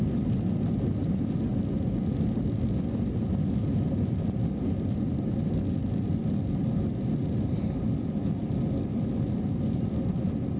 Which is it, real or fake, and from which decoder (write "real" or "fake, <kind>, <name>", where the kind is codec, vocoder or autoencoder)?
real